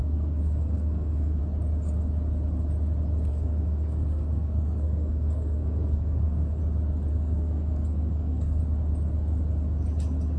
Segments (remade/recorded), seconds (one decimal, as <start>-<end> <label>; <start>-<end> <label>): 0.0-1.4 remade; 1.4-3.3 recorded; 3.3-6.6 remade; 6.6-7.1 recorded; 7.1-8.6 remade; 8.6-10.4 recorded